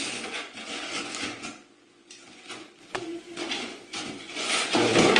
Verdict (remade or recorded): remade